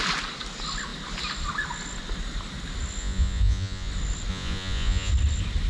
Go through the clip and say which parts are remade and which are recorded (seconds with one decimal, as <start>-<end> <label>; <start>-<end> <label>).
0.0-3.0 recorded; 3.0-3.9 remade; 3.9-4.3 recorded; 4.3-5.1 remade; 5.1-5.7 recorded